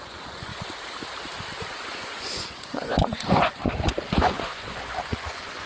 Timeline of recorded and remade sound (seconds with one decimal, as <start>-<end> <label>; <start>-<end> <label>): 0.0-0.5 remade; 0.5-1.7 recorded; 1.7-3.6 remade; 3.6-4.2 recorded; 4.2-5.7 remade